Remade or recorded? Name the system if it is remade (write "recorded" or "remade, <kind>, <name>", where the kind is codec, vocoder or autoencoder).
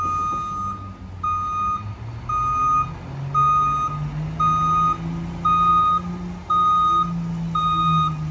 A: recorded